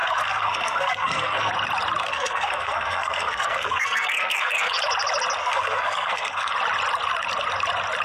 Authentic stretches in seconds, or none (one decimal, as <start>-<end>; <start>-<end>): 1.5-2.0; 4.7-5.4; 6.5-8.0